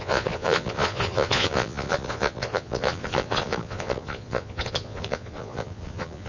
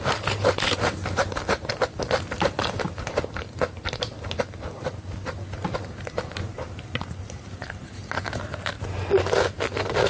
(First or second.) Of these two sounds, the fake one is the first